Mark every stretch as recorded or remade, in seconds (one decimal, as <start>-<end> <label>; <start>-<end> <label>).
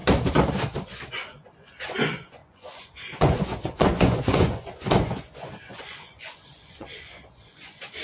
0.0-1.1 recorded; 1.1-8.0 remade